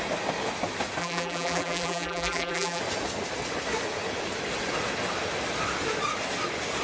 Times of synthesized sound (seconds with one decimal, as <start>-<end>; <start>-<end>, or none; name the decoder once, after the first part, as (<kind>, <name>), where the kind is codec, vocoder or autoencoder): 1.0-2.8 (vocoder, BigVGAN v2)

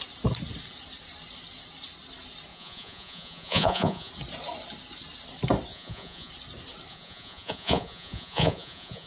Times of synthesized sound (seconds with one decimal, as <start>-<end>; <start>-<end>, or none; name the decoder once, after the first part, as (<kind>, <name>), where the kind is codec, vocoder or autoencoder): 2.5-4.1 (vocoder, Vocos); 5.7-6.3; 6.9-9.1

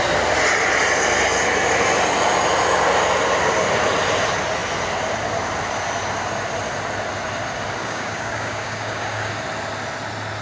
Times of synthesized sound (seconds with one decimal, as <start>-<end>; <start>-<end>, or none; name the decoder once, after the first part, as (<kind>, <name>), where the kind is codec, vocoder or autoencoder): 7.8-9.3 (codec, DAC)

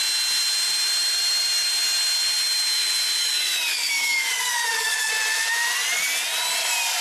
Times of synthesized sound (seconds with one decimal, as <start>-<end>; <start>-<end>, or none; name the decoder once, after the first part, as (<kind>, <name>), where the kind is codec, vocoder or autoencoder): 3.2-5.1 (codec, DAC)

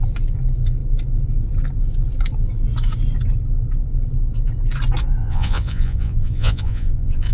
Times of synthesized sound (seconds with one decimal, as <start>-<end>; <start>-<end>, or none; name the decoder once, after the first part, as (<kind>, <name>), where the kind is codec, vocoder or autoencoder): 5.2-7.3 (vocoder, Vocos)